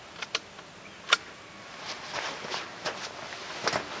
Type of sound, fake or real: real